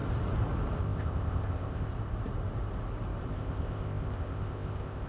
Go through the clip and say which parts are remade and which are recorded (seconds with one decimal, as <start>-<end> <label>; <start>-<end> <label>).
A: 0.0-0.8 recorded; 0.8-1.9 remade; 1.9-3.3 recorded; 3.3-5.1 remade